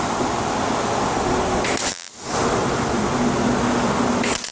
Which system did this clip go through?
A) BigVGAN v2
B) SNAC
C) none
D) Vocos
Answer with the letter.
C